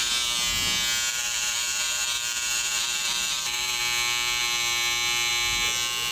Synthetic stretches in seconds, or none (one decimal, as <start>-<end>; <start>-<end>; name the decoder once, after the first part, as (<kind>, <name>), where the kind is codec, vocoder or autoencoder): 1.1-3.8 (vocoder, BigVGAN v2)